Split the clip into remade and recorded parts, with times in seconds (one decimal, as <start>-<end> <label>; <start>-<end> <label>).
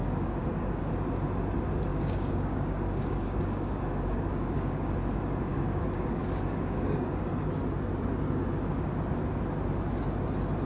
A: 0.0-0.8 remade; 0.8-1.9 recorded; 1.9-4.9 remade; 4.9-5.5 recorded; 5.5-7.1 remade; 7.1-10.7 recorded